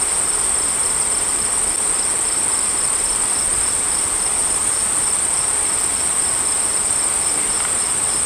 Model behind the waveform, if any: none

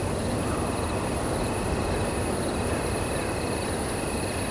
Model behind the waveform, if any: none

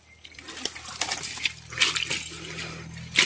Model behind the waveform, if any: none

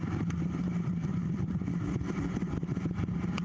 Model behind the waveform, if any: none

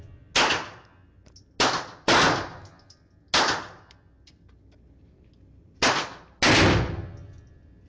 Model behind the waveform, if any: none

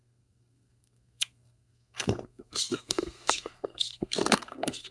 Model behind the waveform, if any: codec, SNAC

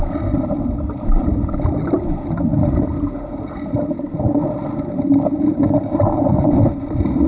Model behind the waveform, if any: none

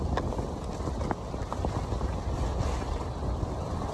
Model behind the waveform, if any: none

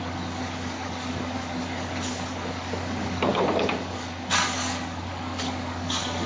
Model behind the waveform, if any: codec, DAC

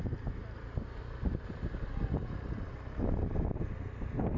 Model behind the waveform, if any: none